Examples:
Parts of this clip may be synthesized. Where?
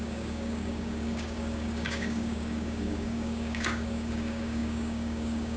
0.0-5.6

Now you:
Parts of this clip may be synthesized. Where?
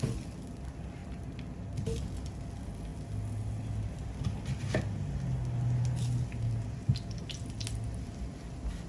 none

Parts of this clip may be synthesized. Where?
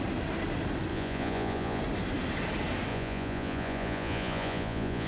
0.9-1.8; 2.9-5.1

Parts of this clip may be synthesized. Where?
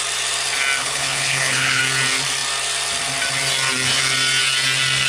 0.8-1.8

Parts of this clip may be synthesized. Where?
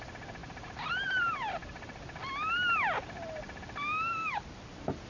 none